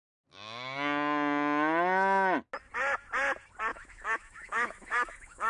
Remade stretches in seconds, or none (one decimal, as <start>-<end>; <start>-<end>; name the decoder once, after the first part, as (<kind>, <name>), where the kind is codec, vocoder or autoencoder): 3.7-5.5 (autoencoder, DAC-VAE)